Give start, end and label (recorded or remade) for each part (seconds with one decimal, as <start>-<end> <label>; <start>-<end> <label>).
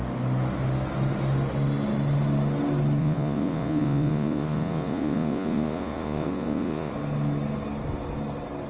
0.0-3.0 recorded; 3.0-6.9 remade; 6.9-8.7 recorded